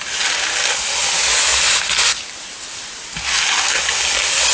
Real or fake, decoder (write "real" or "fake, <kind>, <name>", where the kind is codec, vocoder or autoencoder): real